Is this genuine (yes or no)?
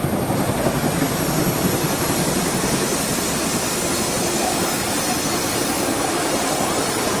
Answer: yes